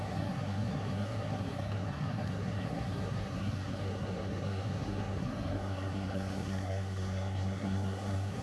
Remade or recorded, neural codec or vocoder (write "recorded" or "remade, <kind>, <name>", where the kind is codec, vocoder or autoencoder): remade, codec, SNAC